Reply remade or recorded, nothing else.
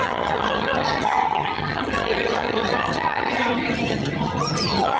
remade